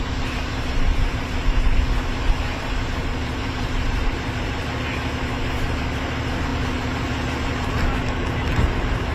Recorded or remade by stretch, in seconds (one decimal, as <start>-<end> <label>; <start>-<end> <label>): 0.0-0.5 recorded; 0.5-1.2 remade; 1.2-3.0 recorded; 3.0-4.6 remade; 4.6-9.1 recorded